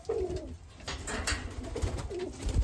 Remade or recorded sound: recorded